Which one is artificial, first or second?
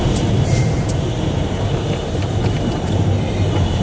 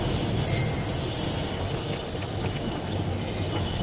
first